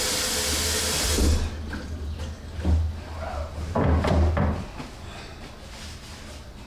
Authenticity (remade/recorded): recorded